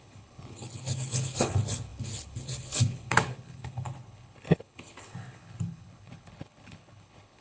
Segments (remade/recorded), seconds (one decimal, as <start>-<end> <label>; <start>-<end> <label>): 0.0-7.4 remade